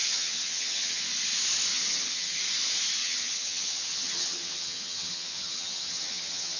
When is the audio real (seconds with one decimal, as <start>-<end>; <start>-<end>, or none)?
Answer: 1.0-1.7; 2.4-3.0